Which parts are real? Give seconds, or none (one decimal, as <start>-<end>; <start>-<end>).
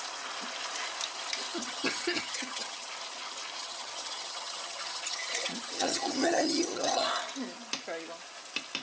0.0-1.5; 2.9-3.6; 7.1-8.8